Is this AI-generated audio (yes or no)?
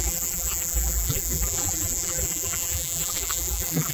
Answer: yes